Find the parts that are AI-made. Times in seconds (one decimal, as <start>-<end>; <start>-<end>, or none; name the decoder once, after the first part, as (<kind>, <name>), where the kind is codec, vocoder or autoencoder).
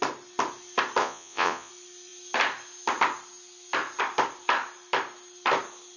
1.0-1.7 (vocoder, Vocos)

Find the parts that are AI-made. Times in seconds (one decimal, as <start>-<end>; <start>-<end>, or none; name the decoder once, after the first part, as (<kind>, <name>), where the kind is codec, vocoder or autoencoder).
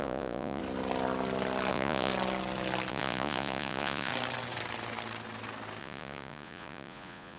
0.0-0.6 (vocoder, Vocos); 1.7-2.1; 2.9-4.1; 5.8-7.4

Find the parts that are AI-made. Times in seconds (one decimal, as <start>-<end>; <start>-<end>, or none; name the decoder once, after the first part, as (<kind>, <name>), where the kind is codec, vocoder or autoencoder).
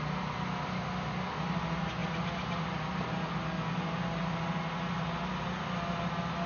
none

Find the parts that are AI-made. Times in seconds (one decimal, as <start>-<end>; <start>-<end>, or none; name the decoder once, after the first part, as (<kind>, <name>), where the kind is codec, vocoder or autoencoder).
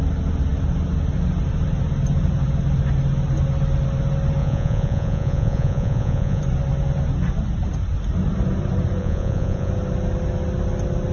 4.4-6.4 (vocoder, Vocos); 9.0-9.7